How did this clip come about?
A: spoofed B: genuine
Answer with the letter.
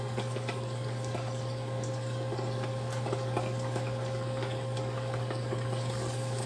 A